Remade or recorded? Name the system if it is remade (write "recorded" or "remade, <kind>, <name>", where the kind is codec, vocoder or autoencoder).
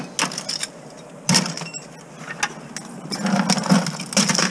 recorded